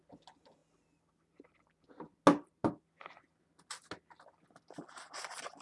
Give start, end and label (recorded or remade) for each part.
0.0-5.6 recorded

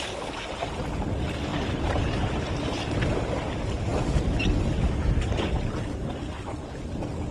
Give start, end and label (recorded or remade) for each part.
0.0-7.3 recorded

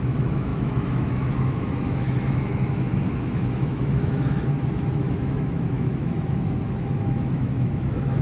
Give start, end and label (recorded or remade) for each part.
0.0-8.2 remade

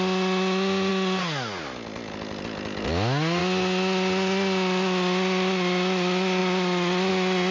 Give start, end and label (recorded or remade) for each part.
0.0-7.5 recorded

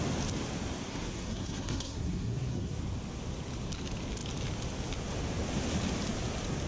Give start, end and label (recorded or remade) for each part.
0.0-0.9 recorded; 0.9-2.8 remade; 2.8-6.7 recorded

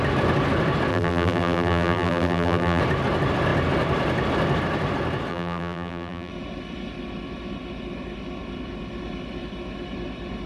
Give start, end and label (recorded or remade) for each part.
0.0-0.9 recorded; 0.9-2.8 remade; 2.8-5.3 recorded; 5.3-6.3 remade; 6.3-10.5 recorded